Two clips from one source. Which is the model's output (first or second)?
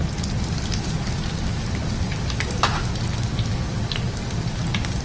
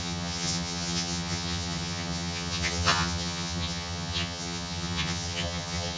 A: second